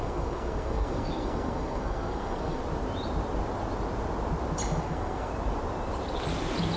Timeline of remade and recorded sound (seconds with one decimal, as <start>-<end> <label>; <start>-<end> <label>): 0.0-2.6 remade; 2.6-4.8 recorded; 4.8-5.3 remade; 5.3-6.8 recorded